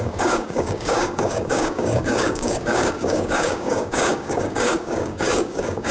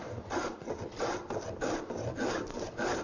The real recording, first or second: second